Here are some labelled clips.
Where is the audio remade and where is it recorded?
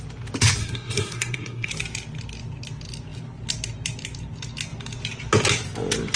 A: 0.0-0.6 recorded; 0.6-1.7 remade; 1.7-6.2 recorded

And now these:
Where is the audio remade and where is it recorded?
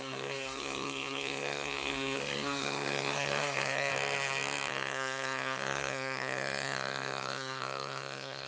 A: 0.0-3.9 remade; 3.9-4.7 recorded; 4.7-8.5 remade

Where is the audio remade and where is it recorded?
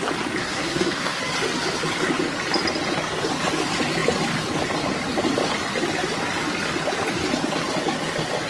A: 0.0-0.4 recorded; 0.4-1.2 remade; 1.2-8.5 recorded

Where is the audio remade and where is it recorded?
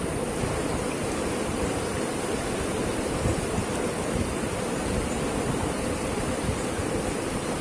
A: 0.0-7.6 recorded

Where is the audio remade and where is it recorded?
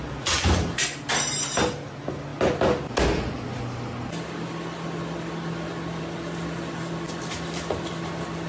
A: 0.0-8.5 recorded